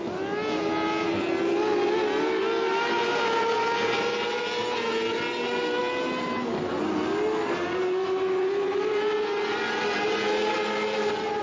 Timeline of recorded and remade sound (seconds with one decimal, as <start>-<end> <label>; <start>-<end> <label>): 0.0-11.4 recorded